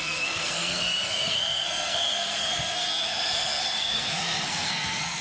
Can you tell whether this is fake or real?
fake